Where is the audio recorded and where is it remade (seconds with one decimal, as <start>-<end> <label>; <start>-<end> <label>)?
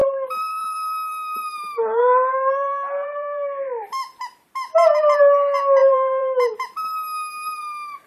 0.0-4.0 remade; 4.0-5.8 recorded; 5.8-6.5 remade; 6.5-8.1 recorded